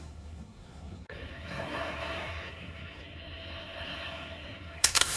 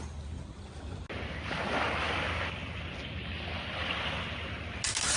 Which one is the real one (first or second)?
second